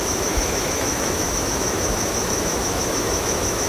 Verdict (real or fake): fake